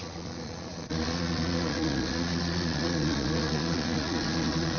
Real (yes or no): no